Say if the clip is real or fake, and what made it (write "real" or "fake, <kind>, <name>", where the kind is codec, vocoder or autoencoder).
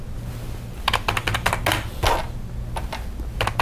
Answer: real